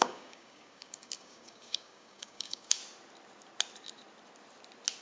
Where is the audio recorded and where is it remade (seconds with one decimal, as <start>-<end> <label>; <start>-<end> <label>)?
0.0-2.8 remade; 2.8-5.0 recorded